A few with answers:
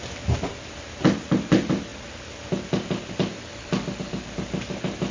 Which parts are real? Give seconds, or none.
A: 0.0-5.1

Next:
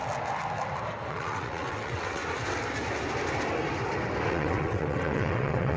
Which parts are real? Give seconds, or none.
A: 0.0-1.1; 2.2-4.3

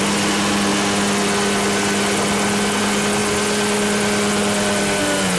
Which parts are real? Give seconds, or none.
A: 0.0-5.4

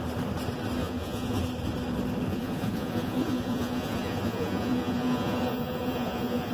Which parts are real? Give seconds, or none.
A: 0.0-0.8; 1.4-2.3

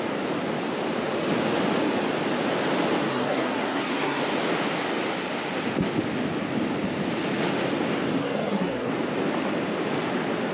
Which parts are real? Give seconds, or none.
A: 0.0-3.1; 4.2-8.2; 8.9-10.5